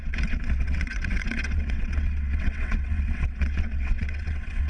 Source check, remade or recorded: remade